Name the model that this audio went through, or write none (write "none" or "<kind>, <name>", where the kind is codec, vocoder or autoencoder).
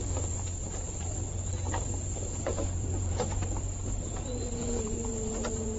vocoder, BigVGAN v2